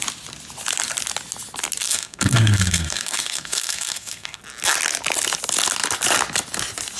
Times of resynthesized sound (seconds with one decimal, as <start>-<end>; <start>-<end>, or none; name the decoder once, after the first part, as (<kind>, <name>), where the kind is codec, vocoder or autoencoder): 1.8-4.4 (codec, SNAC)